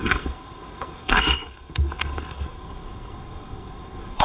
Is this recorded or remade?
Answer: remade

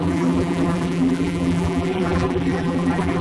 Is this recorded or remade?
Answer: remade